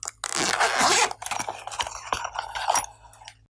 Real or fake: real